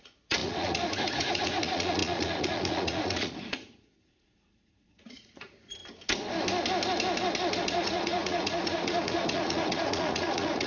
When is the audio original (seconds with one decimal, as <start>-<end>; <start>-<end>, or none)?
5.8-7.6